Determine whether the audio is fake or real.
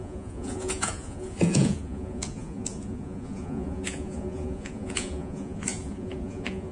fake